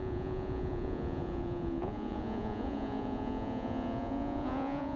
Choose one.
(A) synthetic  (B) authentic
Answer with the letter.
A